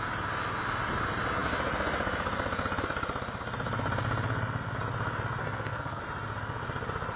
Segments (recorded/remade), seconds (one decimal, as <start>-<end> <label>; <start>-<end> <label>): 0.0-5.4 recorded; 5.4-6.0 remade; 6.0-7.2 recorded